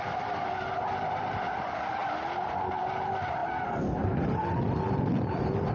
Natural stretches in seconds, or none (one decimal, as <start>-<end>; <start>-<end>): 0.0-5.7